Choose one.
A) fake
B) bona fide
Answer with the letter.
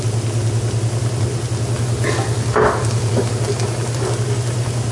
B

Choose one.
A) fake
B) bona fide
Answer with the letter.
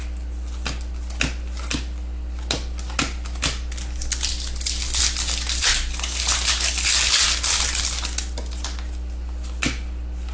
B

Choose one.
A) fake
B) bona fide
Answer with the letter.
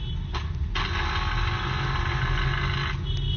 B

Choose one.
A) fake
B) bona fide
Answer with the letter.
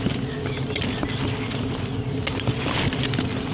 B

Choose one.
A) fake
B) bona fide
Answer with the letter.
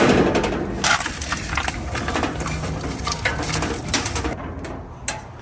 B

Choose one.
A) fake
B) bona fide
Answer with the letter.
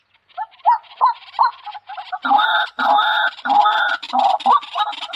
B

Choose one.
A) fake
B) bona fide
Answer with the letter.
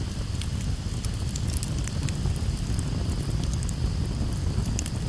B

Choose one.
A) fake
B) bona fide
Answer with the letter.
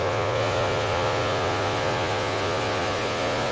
A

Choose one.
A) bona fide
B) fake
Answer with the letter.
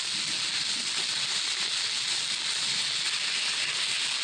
A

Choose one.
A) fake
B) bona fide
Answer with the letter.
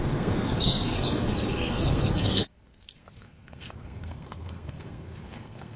A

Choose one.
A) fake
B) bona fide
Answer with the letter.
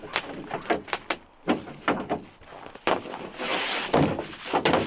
B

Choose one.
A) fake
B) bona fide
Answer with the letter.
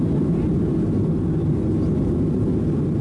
B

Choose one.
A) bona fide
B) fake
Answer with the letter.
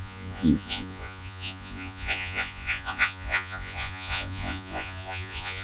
B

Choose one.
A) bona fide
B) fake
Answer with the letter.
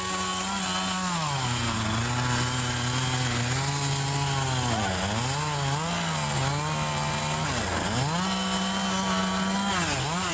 A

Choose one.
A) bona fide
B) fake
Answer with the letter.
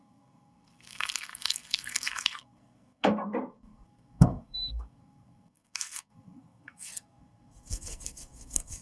B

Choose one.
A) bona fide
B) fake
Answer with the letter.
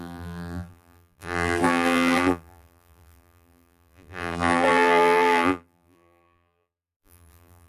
B